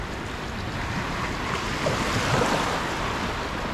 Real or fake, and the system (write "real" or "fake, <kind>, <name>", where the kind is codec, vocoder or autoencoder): real